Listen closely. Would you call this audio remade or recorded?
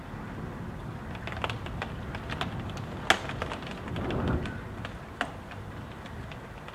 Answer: recorded